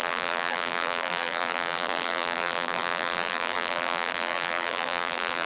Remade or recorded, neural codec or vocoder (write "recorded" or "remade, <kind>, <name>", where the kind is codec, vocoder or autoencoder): remade, vocoder, BigVGAN v2